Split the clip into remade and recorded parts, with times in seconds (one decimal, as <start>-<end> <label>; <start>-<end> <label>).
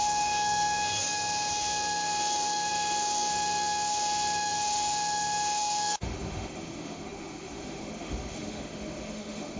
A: 0.0-9.6 remade